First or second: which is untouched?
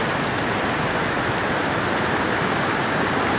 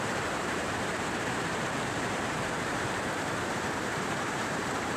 first